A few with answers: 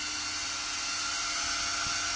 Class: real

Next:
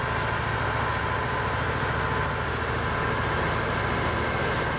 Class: real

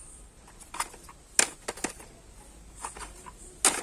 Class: real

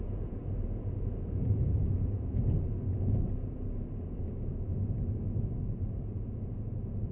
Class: fake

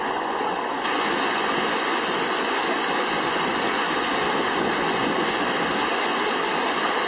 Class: fake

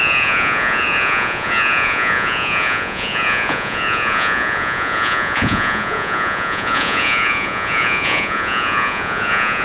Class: fake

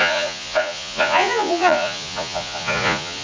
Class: fake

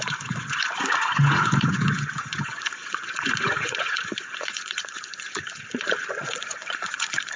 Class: fake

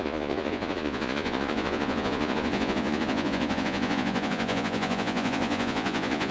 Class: fake